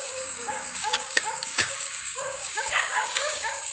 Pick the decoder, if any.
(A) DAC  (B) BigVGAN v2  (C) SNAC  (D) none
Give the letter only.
A